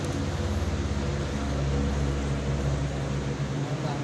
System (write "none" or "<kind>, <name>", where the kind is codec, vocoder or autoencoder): none